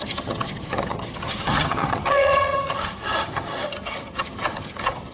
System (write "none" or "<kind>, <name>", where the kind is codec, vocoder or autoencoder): vocoder, HiFi-GAN